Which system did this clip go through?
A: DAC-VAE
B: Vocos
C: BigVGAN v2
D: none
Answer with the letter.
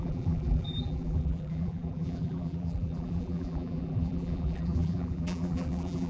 C